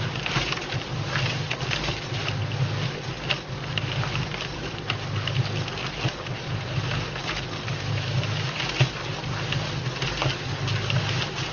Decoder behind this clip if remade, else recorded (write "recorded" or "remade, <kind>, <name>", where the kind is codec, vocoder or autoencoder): recorded